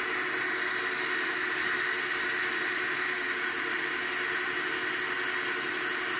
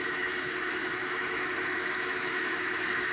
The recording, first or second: first